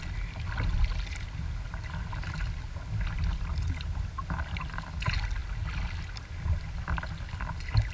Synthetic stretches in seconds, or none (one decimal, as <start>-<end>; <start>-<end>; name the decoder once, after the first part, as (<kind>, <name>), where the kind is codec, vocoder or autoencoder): none